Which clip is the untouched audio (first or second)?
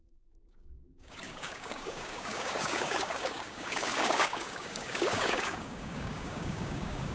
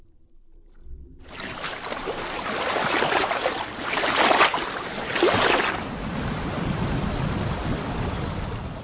second